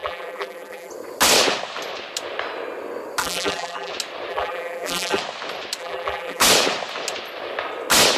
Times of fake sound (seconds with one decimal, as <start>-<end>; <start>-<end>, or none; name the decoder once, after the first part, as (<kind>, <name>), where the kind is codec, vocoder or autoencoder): 0.0-0.9 (vocoder, BigVGAN v2); 3.2-3.9; 4.3-5.2; 5.8-6.4